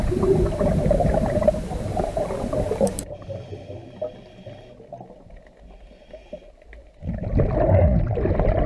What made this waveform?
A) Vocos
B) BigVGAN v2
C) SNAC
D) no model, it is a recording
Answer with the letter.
D